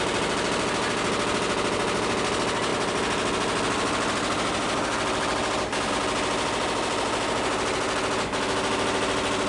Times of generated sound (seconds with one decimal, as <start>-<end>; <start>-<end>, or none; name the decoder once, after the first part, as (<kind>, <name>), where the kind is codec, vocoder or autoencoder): none